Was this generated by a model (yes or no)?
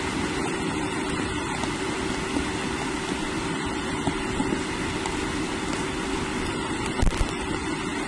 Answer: no